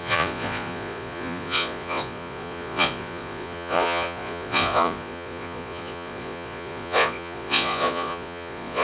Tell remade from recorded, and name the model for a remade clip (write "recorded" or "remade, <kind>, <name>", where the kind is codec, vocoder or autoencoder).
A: remade, vocoder, Vocos